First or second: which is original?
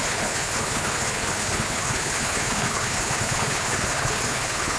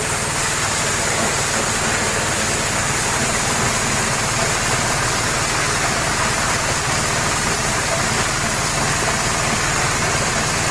second